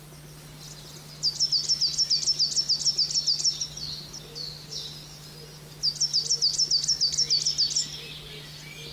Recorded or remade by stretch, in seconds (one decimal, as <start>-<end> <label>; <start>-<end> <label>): 0.0-8.9 recorded